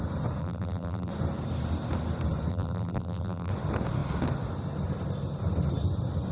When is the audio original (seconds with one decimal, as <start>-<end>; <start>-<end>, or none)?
0.0-0.4; 1.1-2.5; 3.5-6.3